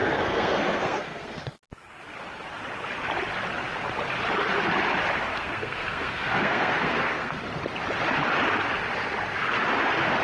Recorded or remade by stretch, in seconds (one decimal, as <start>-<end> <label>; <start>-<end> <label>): 0.0-1.4 remade; 1.4-5.3 recorded; 5.3-7.4 remade; 7.4-10.2 recorded

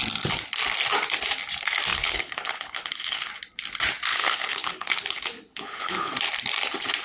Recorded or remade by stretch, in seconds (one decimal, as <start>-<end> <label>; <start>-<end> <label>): 0.0-1.9 recorded; 1.9-3.3 remade; 3.3-4.1 recorded; 4.1-6.1 remade; 6.1-7.0 recorded

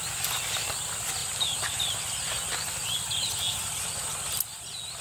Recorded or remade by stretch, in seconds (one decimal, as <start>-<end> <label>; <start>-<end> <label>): 0.0-1.2 recorded; 1.2-1.8 remade; 1.8-5.0 recorded

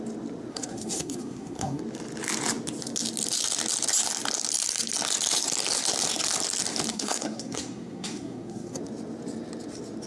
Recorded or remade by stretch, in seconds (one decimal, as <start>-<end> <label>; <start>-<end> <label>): 0.0-0.5 recorded; 0.5-1.8 remade; 1.8-6.9 recorded; 6.9-8.8 remade; 8.8-10.1 recorded

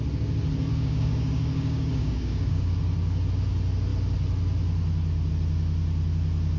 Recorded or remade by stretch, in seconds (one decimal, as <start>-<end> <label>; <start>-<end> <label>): 0.0-0.7 recorded; 0.7-2.8 remade; 2.8-6.6 recorded